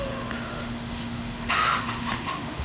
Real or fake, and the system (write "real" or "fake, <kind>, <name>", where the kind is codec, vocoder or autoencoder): fake, autoencoder, DAC-VAE